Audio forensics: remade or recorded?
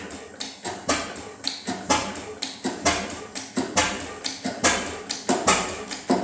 recorded